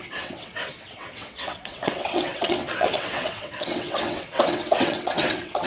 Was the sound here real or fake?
fake